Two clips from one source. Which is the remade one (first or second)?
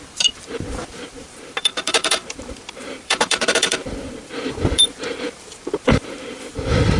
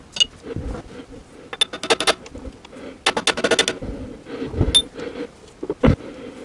first